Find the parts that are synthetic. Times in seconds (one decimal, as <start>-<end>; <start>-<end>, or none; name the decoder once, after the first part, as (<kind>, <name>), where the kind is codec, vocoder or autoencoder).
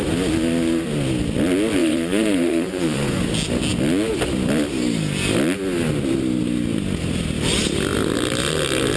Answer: 1.8-3.2 (vocoder, Vocos)